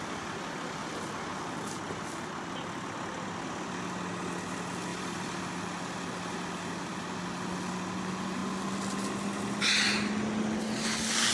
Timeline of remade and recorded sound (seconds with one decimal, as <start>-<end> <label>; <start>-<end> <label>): 0.0-4.9 recorded; 4.9-5.4 remade; 5.4-11.3 recorded